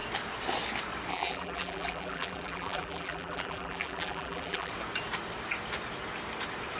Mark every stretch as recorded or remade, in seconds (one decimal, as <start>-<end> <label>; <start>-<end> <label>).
0.0-1.1 recorded; 1.1-4.7 remade; 4.7-6.8 recorded